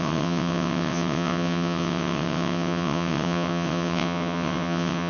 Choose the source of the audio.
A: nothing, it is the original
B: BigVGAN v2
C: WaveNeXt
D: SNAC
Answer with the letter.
C